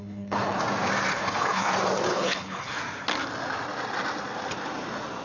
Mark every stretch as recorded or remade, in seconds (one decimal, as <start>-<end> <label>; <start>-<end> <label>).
0.0-0.6 remade; 0.6-1.1 recorded; 1.1-1.7 remade; 1.7-2.1 recorded; 2.1-2.8 remade; 2.8-5.2 recorded